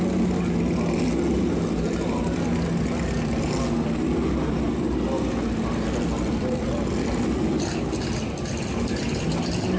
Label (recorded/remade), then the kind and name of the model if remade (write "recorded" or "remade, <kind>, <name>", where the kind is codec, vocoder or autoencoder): recorded